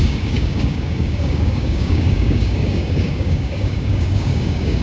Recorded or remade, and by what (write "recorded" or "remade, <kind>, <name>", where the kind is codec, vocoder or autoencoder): remade, codec, DAC